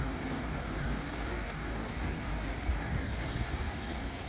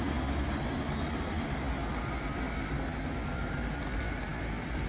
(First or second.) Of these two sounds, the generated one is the first